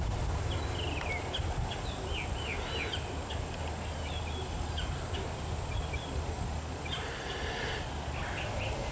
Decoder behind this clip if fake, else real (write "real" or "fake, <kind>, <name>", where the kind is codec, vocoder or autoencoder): real